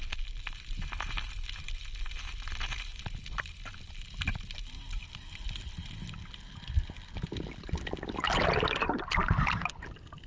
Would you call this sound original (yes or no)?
yes